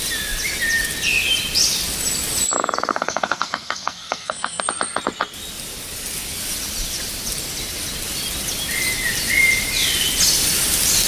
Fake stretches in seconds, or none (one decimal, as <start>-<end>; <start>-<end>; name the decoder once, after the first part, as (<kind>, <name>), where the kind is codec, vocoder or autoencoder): 2.9-4.6 (codec, SNAC)